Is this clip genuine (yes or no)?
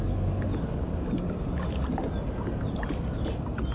yes